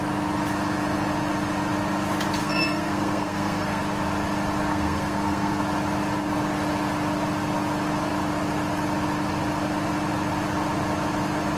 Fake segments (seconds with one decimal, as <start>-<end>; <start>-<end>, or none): 2.4-3.8; 4.7-5.6

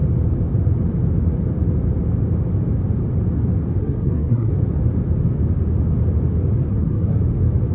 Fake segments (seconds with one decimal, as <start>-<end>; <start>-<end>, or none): 3.8-4.5; 6.7-7.2